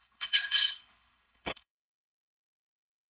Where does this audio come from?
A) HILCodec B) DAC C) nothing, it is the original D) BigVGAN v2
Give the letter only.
A